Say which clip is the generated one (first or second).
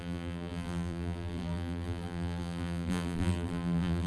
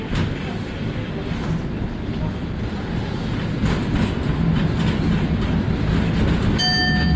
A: first